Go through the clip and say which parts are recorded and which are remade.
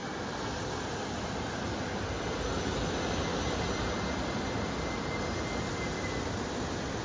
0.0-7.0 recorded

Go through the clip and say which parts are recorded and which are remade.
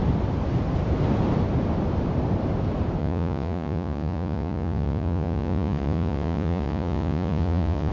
0.0-3.0 recorded; 3.0-7.9 remade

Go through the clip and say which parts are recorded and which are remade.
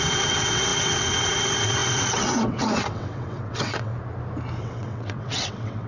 0.0-3.9 remade; 3.9-4.6 recorded; 4.6-5.9 remade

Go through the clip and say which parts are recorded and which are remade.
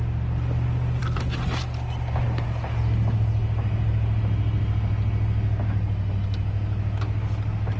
0.0-7.8 recorded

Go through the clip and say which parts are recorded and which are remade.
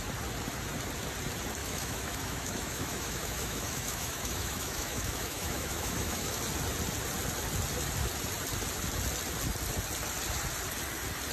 0.0-1.6 recorded; 1.6-6.4 remade; 6.4-11.3 recorded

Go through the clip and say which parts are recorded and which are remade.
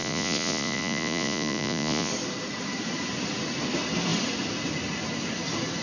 0.0-2.1 remade; 2.1-5.8 recorded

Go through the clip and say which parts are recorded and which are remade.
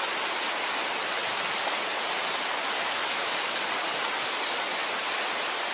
0.0-5.7 recorded